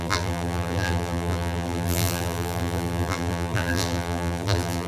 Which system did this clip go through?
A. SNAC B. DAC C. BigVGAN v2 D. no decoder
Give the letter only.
C